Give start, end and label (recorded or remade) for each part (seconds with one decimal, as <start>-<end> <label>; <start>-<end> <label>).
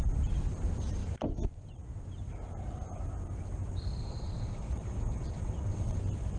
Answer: 0.0-4.0 recorded; 4.0-6.0 remade; 6.0-6.4 recorded